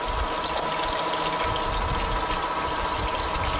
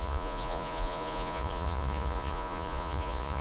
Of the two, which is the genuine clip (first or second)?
first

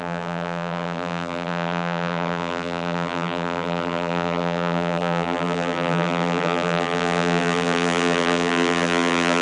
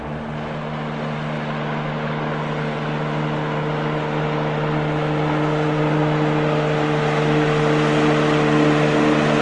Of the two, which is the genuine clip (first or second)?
second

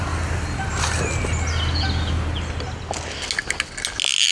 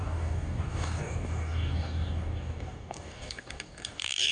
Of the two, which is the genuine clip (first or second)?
first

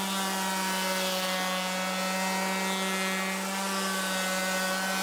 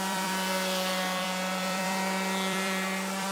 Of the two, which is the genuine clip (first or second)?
first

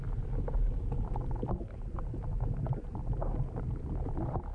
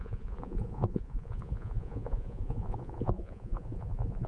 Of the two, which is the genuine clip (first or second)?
first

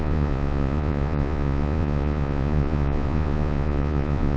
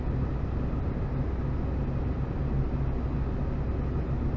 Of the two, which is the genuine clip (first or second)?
second